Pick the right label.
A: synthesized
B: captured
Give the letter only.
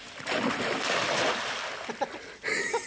B